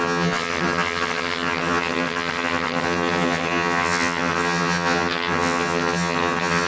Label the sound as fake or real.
fake